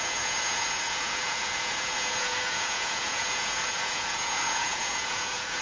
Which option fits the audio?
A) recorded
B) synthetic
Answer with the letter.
B